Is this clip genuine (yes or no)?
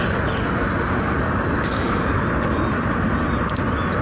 yes